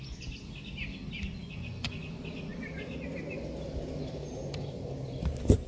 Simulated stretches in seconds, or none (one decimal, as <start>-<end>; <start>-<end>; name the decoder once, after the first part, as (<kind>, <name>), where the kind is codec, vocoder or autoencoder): 1.4-2.1 (vocoder, Vocos)